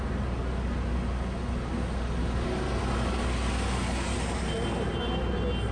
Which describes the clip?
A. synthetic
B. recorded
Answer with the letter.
B